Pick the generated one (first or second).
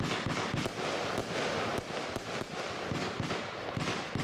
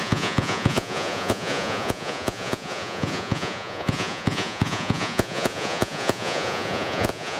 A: second